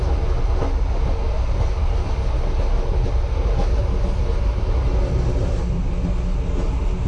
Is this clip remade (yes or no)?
no